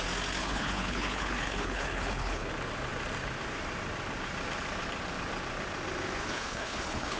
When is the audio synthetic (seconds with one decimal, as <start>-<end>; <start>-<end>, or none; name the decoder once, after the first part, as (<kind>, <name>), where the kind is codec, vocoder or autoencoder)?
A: 0.4-2.5 (codec, HILCodec); 6.2-7.2